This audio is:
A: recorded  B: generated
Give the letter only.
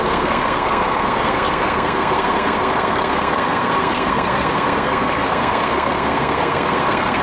B